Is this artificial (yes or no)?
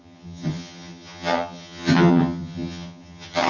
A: yes